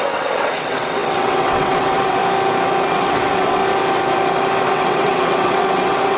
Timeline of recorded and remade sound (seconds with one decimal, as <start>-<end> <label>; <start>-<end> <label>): 0.0-2.2 remade; 2.2-2.9 recorded; 2.9-3.6 remade; 3.6-4.6 recorded; 4.6-6.2 remade